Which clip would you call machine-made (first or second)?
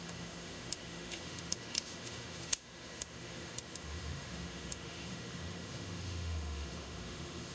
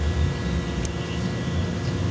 first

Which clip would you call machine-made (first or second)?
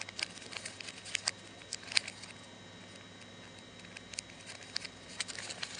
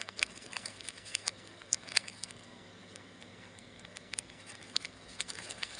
second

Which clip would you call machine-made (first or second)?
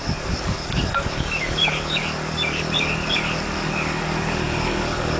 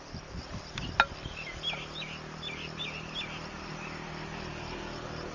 first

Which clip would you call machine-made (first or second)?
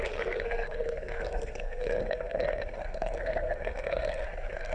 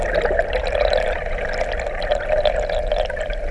first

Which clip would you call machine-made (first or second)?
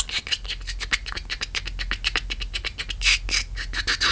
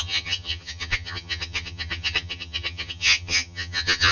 second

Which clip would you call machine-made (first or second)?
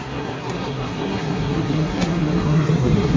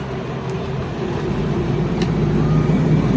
first